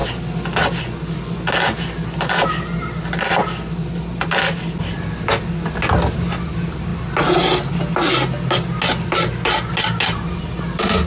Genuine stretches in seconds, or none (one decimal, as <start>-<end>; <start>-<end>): 0.0-11.1